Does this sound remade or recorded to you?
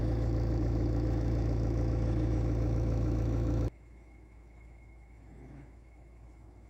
remade